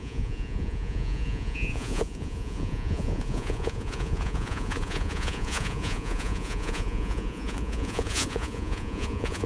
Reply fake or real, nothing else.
fake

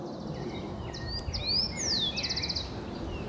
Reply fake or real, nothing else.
real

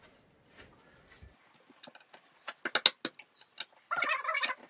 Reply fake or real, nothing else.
real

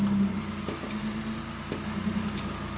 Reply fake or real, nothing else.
real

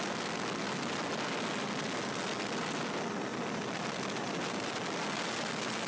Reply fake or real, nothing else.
real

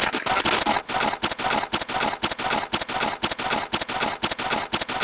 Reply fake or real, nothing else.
real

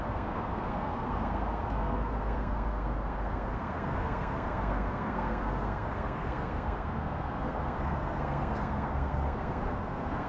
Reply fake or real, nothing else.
fake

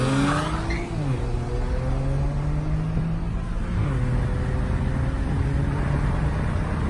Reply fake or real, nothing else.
real